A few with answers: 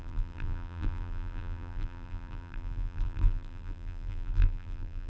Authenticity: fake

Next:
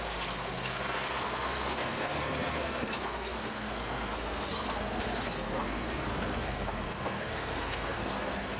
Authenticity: fake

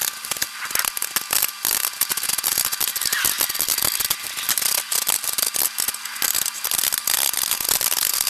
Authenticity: real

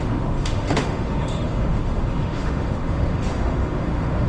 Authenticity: fake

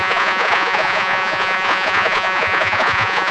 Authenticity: fake